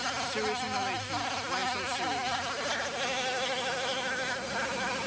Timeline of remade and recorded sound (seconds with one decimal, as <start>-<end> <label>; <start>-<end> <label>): 0.0-5.1 recorded